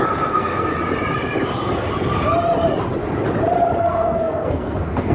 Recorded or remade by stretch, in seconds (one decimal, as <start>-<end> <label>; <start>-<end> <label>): 0.0-0.7 remade; 0.7-3.8 recorded; 3.8-5.1 remade

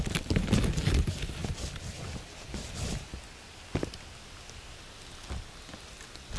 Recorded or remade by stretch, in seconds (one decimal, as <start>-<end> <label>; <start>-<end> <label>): 0.0-6.4 recorded

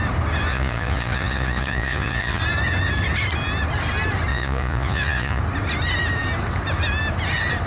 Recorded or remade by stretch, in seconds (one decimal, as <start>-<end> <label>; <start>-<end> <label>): 0.0-0.5 recorded; 0.5-2.4 remade; 2.4-4.3 recorded; 4.3-5.4 remade; 5.4-7.7 recorded

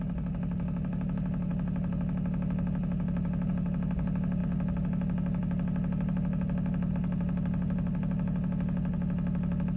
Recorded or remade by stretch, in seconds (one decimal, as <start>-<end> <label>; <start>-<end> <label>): 0.0-9.8 recorded

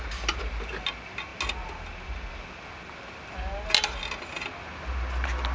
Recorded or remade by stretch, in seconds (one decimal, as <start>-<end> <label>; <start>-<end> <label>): 0.0-5.5 recorded

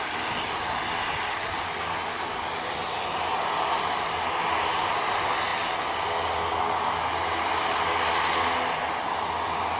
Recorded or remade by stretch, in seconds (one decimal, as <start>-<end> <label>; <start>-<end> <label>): 0.0-9.8 recorded

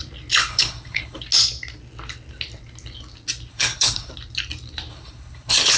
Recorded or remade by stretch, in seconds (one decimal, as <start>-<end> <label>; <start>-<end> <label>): 0.0-0.5 recorded; 0.5-1.2 remade; 1.2-3.5 recorded; 3.5-4.1 remade; 4.1-4.9 recorded; 4.9-5.8 remade

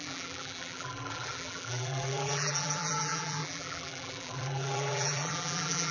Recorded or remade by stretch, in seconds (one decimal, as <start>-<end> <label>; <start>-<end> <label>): 0.0-5.9 remade